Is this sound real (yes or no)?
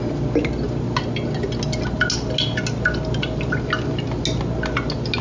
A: yes